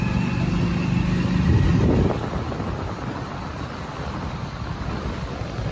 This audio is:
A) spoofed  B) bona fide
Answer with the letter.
B